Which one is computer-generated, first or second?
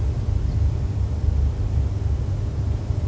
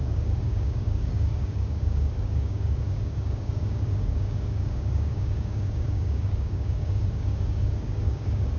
second